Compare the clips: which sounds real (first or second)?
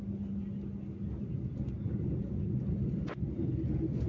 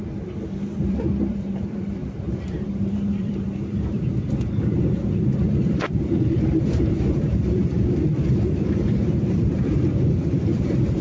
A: first